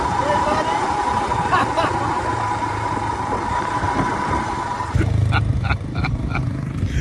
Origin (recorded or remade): remade